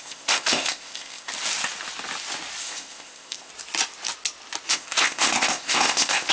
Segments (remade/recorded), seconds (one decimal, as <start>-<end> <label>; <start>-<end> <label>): 0.0-1.3 remade; 1.3-2.6 recorded; 2.6-3.5 remade; 3.5-4.7 recorded; 4.7-6.3 remade